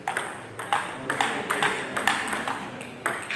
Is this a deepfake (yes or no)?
no